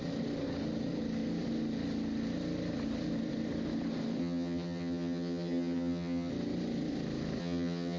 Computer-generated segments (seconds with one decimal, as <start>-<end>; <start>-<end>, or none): 4.2-6.3; 7.4-8.0